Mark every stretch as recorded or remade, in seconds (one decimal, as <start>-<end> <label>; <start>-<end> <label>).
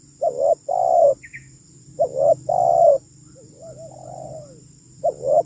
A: 0.0-5.5 recorded